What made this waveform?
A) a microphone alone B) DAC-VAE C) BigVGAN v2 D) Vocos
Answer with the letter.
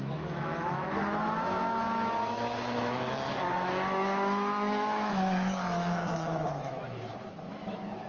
B